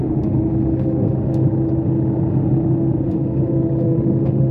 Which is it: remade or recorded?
remade